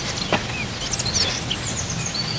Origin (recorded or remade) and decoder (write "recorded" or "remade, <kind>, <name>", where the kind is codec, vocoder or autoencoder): recorded